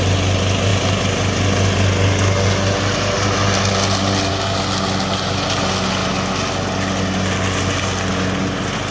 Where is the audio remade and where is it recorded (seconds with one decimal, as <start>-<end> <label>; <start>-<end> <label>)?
0.0-8.9 recorded